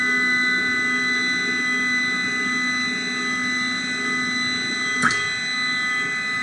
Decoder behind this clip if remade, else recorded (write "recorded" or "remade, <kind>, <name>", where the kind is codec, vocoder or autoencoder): recorded